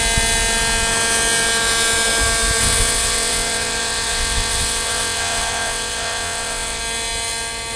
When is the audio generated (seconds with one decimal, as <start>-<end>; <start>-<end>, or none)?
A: 2.6-6.8